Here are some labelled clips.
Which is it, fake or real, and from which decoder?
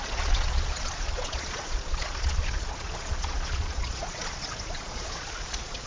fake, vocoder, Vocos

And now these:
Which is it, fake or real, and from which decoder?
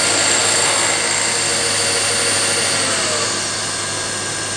real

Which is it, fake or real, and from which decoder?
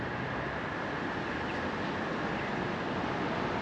real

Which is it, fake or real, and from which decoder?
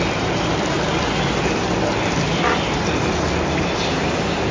real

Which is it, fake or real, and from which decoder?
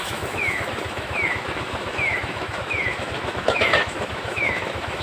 fake, autoencoder, DAC-VAE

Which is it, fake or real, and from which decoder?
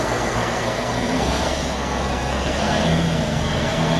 fake, codec, SNAC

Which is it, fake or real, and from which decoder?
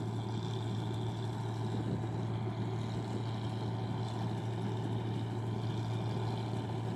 real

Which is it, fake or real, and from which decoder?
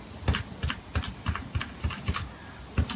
real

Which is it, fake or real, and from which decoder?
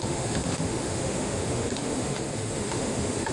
fake, autoencoder, DAC-VAE